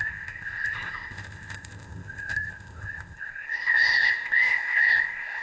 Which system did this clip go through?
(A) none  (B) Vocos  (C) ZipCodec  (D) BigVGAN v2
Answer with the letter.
C